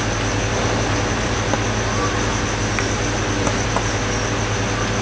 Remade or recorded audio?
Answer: recorded